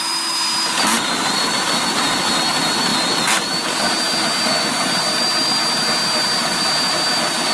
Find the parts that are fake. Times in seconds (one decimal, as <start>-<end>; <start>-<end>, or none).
none